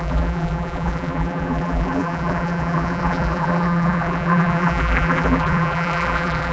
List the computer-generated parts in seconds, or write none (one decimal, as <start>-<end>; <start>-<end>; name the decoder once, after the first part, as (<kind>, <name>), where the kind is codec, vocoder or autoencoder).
0.0-6.5 (vocoder, BigVGAN v2)